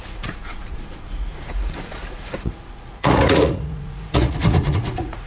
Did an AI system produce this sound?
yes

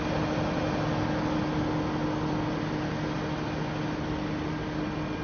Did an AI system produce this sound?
no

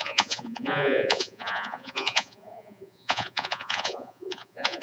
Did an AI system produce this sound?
yes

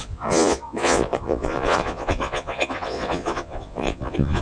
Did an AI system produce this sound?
yes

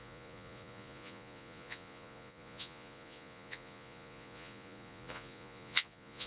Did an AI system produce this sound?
yes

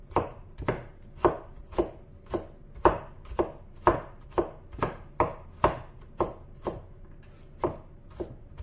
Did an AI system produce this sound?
no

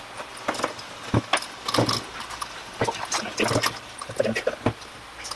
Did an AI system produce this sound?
no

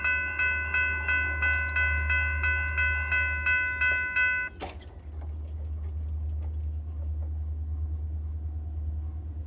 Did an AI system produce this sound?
no